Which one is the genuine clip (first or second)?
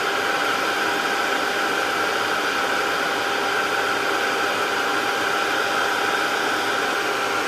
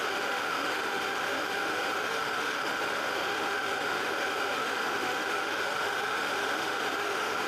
first